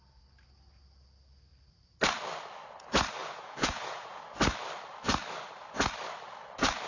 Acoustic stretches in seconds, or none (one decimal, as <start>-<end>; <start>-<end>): 0.0-3.2; 4.2-6.9

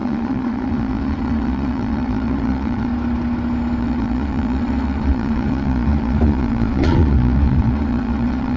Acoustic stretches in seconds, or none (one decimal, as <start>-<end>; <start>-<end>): 2.9-3.8

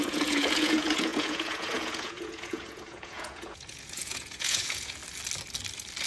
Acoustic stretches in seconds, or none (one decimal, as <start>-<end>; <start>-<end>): 5.0-6.1

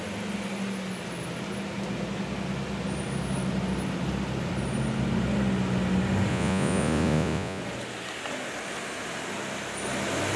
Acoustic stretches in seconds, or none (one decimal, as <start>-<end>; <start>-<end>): 0.0-6.3; 7.6-10.4

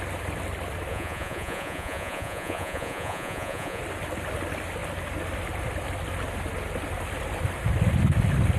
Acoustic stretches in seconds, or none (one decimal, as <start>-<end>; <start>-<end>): 0.0-0.9; 3.8-8.6

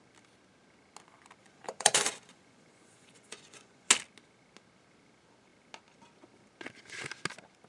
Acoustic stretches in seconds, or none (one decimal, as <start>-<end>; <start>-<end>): 0.0-1.4; 3.9-7.7

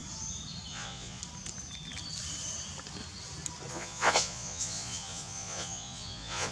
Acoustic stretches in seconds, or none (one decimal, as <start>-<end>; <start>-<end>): 0.0-0.7; 1.2-3.7